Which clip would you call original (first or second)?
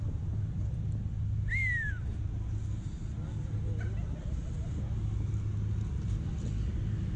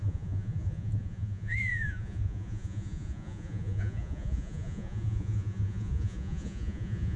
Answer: first